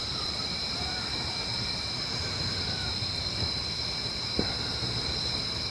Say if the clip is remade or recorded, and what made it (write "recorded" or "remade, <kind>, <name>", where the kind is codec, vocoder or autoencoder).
remade, vocoder, BigVGAN v2